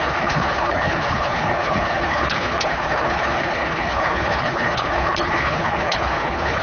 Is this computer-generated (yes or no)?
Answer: yes